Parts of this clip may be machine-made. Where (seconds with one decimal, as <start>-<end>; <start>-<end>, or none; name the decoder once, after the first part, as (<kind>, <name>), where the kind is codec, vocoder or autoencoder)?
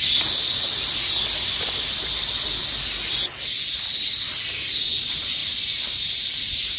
none